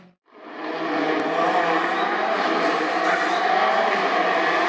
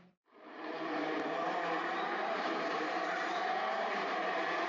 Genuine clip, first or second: first